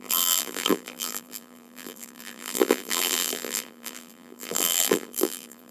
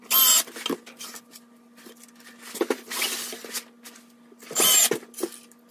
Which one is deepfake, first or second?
first